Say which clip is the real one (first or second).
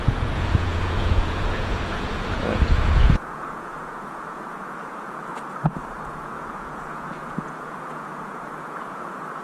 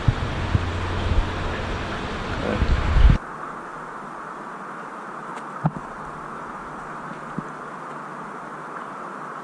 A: second